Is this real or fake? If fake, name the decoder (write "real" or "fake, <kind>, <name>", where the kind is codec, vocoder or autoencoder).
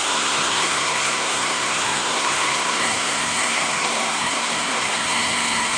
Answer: fake, codec, SNAC